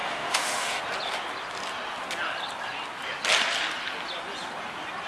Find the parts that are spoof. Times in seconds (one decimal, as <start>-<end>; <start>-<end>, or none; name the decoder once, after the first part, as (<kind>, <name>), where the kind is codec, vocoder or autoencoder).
0.0-0.8 (autoencoder, DAC-VAE)